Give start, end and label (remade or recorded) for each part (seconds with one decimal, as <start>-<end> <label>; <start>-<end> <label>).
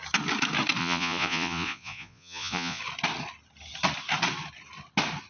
0.0-0.8 recorded; 0.8-2.8 remade; 2.8-5.3 recorded